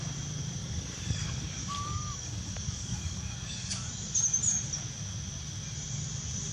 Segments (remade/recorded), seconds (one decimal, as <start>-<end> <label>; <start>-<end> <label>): 0.0-0.6 recorded; 0.6-3.9 remade; 3.9-6.5 recorded